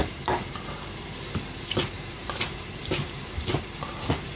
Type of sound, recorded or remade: remade